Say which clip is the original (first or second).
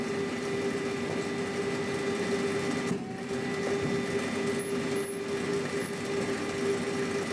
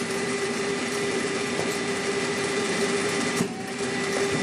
first